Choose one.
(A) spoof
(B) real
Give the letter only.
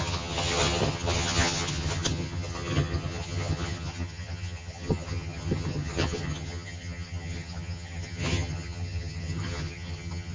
A